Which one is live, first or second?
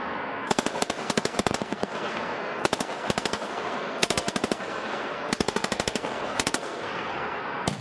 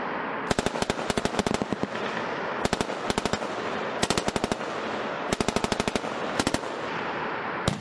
second